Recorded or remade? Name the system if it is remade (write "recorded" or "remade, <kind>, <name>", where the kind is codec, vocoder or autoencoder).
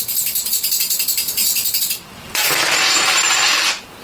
remade, vocoder, BigVGAN v2